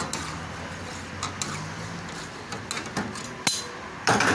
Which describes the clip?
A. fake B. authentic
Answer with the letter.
B